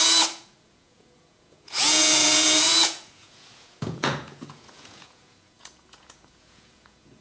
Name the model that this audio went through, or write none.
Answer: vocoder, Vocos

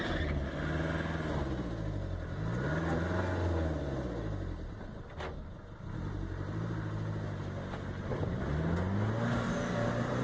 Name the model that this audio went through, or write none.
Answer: none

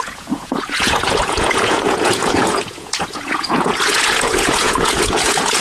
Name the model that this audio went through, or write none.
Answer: vocoder, Vocos